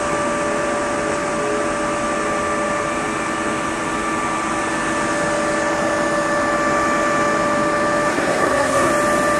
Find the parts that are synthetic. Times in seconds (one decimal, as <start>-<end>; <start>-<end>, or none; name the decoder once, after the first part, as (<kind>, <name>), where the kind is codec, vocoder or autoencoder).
8.1-8.9 (codec, SNAC)